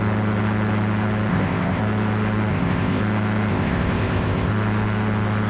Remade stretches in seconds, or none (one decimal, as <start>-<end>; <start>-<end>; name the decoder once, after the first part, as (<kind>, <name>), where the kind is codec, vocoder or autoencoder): 1.3-1.8 (codec, ZipCodec); 2.5-3.0; 3.5-4.5